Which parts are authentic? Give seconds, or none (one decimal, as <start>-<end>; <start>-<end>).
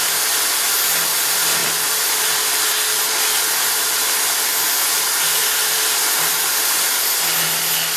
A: 0.0-1.6; 2.3-5.4; 7.1-8.0